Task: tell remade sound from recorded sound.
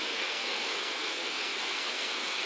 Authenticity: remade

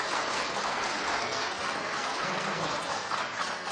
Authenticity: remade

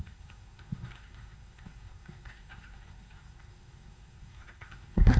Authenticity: remade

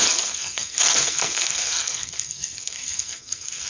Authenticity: remade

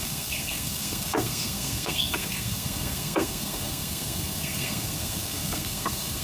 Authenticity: remade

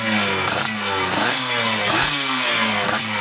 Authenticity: remade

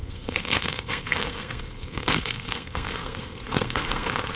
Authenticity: remade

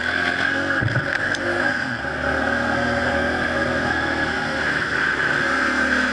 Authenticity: remade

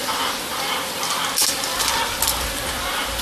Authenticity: recorded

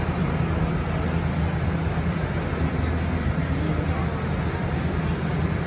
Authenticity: recorded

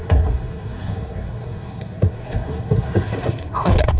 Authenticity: remade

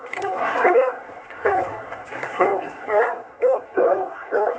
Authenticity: remade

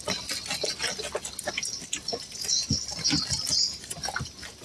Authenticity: recorded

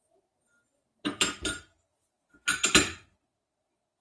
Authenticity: recorded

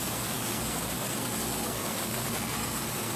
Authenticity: remade